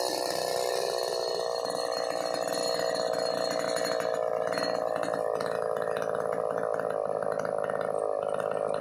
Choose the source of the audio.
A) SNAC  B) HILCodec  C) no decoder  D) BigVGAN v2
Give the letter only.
C